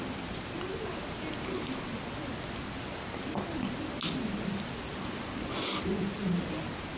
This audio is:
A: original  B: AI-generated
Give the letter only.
A